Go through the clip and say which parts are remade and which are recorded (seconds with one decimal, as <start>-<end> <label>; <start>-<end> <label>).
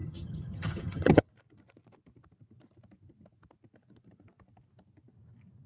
0.0-1.3 remade; 1.3-5.7 recorded